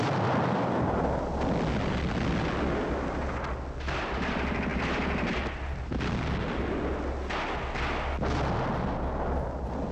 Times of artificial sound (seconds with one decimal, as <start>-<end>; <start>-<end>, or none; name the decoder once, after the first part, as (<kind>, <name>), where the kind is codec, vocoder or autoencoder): none